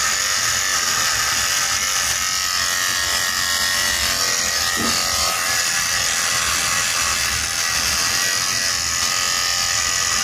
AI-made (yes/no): no